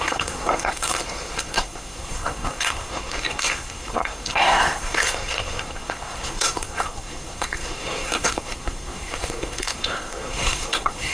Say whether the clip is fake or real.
fake